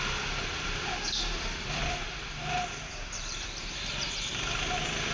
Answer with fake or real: real